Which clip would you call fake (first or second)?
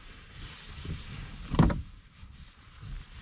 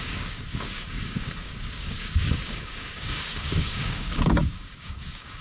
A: second